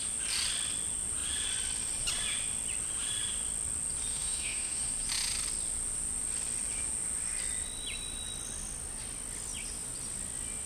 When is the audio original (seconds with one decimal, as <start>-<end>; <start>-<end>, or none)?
0.0-4.1; 4.9-10.7